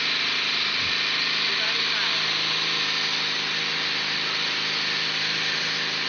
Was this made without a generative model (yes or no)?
yes